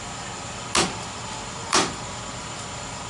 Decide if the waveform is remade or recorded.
recorded